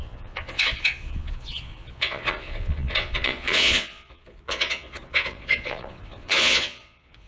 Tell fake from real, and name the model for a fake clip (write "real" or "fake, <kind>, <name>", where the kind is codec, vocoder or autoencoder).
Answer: fake, vocoder, Vocos